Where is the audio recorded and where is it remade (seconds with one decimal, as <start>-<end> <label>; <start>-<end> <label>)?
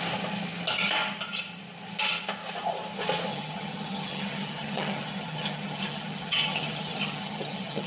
0.0-3.3 recorded; 3.3-7.9 remade